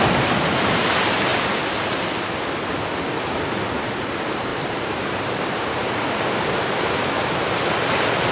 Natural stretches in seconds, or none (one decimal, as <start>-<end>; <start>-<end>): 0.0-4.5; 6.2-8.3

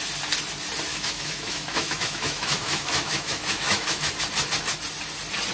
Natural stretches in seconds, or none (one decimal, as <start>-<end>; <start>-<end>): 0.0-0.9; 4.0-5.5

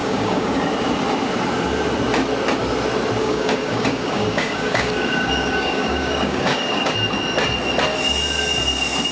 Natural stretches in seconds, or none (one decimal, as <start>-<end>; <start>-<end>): 0.6-3.2; 6.9-9.1

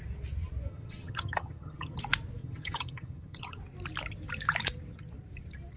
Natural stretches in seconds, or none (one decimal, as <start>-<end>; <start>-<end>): 0.0-0.7; 2.0-2.4; 3.6-5.8